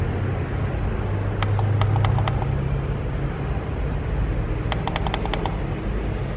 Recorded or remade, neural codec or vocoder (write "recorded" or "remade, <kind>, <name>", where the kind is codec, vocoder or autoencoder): recorded